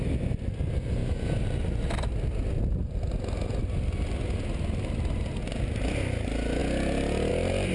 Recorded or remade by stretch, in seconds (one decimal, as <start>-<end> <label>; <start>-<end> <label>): 0.0-7.7 recorded